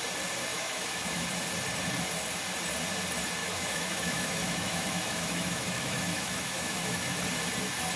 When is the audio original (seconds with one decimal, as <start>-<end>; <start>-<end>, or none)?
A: 0.0-0.5; 1.3-3.4; 7.2-8.0